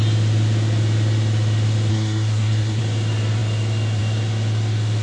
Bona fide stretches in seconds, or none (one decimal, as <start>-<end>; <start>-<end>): 0.0-1.9; 2.8-5.0